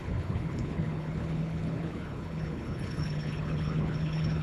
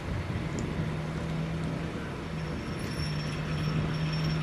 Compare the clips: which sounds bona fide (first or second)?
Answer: second